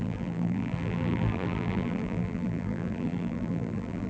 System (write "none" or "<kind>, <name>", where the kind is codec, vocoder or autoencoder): vocoder, BigVGAN v2